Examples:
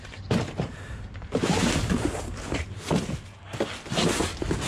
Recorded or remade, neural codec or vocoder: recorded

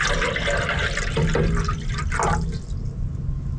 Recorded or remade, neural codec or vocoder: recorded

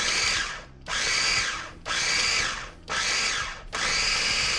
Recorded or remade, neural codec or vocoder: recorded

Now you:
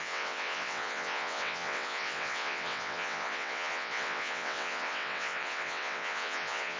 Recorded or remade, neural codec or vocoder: remade, vocoder, WaveNeXt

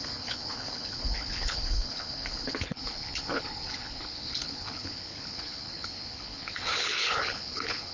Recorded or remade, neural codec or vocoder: remade, codec, HILCodec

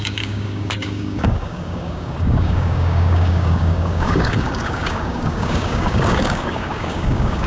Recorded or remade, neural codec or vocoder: remade, codec, DAC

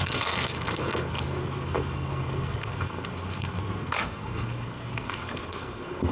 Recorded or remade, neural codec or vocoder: remade, codec, SNAC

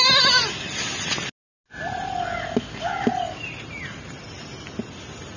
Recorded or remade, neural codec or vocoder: recorded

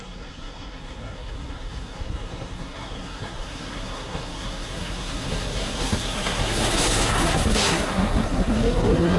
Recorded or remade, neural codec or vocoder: remade, codec, SNAC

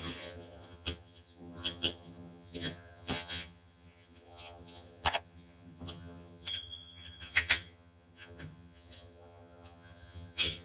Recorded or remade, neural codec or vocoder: remade, vocoder, HiFi-GAN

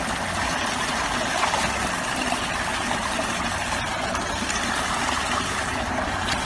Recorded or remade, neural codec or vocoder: recorded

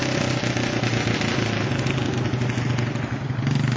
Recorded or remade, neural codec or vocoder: recorded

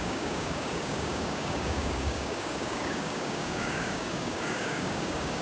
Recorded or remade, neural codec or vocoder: remade, codec, DAC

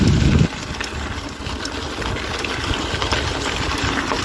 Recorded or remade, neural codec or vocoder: recorded